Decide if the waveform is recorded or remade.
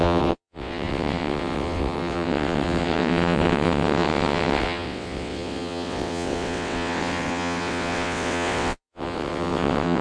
remade